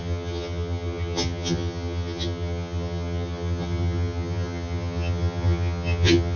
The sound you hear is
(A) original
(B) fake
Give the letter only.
B